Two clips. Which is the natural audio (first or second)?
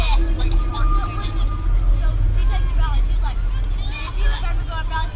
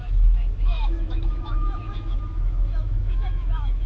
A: first